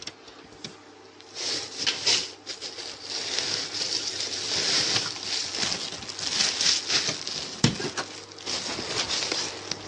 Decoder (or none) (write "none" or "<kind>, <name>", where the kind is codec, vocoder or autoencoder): none